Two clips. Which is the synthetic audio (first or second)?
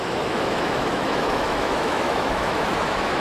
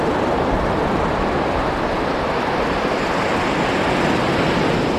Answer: first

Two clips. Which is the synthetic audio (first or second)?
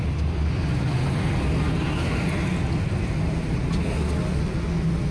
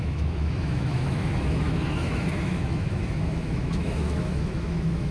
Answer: second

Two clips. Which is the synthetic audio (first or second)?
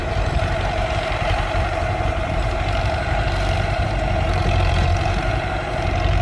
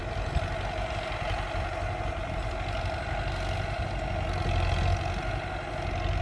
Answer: first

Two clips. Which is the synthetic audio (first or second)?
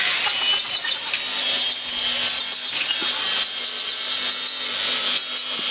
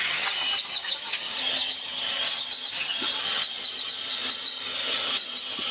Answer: second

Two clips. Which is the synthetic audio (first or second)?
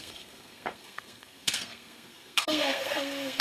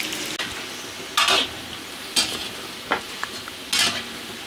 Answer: first